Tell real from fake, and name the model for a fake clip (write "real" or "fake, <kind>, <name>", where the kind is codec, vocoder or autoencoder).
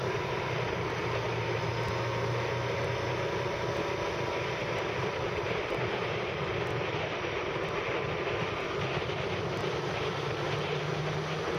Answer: real